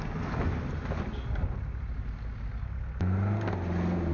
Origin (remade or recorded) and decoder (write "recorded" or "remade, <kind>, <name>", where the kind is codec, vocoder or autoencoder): recorded